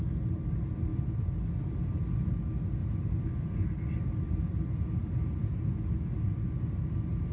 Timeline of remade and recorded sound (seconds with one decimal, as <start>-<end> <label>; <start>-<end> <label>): 0.0-7.3 recorded